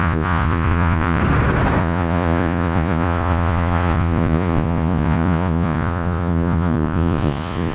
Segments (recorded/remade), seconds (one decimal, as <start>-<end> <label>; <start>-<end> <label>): 0.0-1.2 remade; 1.2-1.8 recorded; 1.8-7.7 remade